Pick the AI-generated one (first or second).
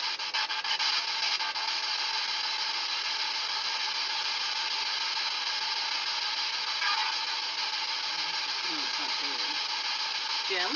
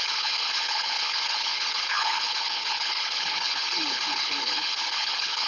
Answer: second